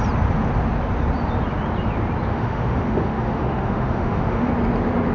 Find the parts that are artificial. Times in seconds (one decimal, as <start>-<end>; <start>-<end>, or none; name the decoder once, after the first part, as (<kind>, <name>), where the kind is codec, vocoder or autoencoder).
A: 2.3-4.5 (autoencoder, DAC-VAE)